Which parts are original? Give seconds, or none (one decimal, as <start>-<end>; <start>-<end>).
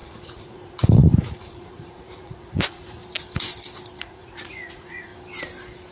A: 3.0-4.0; 5.1-5.9